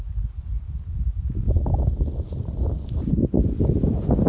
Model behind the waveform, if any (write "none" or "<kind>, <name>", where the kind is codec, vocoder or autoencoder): none